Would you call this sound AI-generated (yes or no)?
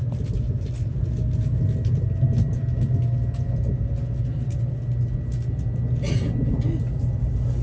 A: no